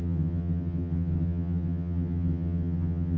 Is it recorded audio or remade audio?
remade